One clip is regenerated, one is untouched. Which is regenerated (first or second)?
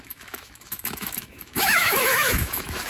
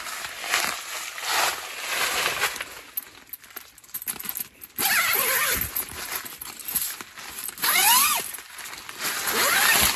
first